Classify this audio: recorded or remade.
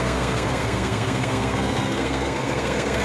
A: remade